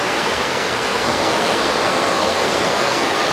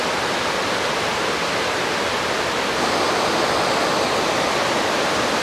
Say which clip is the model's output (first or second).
first